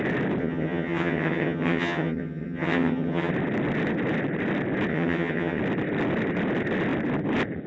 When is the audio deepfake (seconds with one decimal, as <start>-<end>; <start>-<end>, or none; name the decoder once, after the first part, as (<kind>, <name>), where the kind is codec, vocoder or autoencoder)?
0.4-3.3 (vocoder, HiFi-GAN); 4.9-5.6